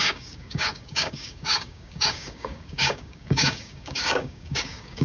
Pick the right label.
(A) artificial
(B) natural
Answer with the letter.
A